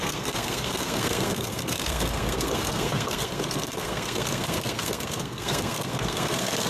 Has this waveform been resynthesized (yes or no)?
yes